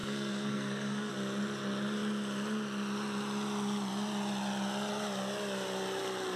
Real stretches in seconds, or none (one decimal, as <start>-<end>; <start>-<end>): 1.1-6.4